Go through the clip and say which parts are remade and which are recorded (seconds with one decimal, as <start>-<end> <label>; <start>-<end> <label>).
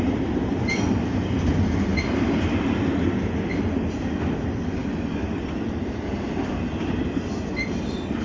0.0-8.2 recorded